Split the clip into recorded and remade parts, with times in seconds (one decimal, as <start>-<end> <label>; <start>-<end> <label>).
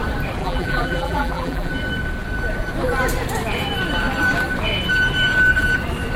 0.0-0.4 recorded; 0.4-1.7 remade; 1.7-6.2 recorded